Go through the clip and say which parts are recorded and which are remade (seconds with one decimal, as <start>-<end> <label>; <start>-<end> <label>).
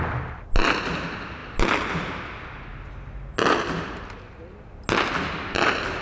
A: 0.0-6.0 recorded